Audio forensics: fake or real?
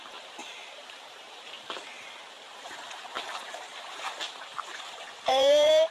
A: fake